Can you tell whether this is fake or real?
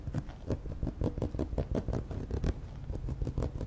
real